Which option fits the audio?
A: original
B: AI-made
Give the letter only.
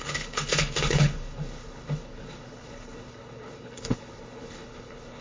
B